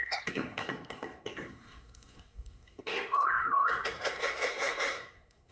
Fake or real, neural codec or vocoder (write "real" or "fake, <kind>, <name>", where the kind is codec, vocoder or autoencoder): fake, codec, SNAC